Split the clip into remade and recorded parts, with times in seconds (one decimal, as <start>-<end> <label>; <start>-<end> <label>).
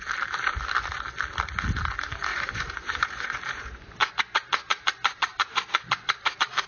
0.0-2.3 recorded; 2.3-6.3 remade; 6.3-6.7 recorded